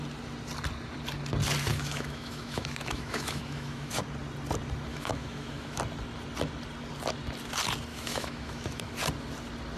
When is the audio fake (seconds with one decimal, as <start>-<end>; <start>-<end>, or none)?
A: 1.7-4.0; 4.9-5.8; 7.9-8.8

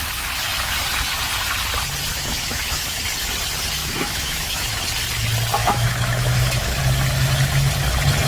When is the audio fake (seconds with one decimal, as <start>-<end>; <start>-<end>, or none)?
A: 2.1-3.0; 3.8-4.8; 5.6-6.8

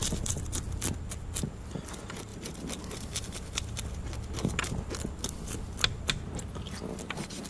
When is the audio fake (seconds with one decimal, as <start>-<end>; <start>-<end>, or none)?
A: none

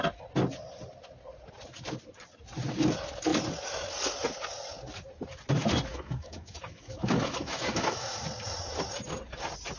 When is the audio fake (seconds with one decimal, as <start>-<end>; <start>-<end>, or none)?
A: 5.9-8.2

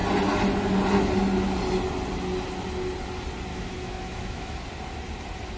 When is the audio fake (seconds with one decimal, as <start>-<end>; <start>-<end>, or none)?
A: 3.5-4.6